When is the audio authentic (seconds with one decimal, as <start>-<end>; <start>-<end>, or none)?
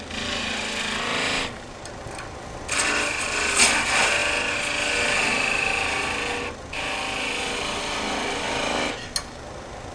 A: 0.0-9.9